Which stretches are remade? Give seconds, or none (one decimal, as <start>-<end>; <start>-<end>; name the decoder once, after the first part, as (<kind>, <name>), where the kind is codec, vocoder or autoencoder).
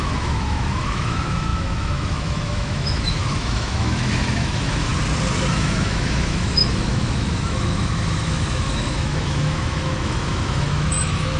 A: 0.0-4.9 (autoencoder, DAC-VAE); 5.5-11.4